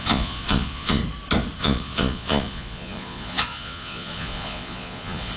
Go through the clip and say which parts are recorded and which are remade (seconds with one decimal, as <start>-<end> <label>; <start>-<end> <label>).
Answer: 0.0-1.0 remade; 1.0-1.6 recorded; 1.6-5.4 remade